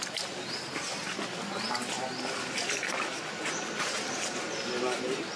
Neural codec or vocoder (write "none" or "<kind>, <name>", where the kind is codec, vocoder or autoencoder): none